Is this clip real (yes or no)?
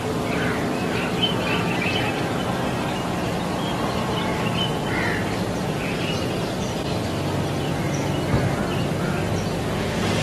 yes